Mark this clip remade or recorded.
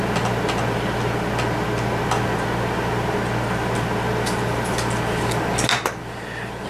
recorded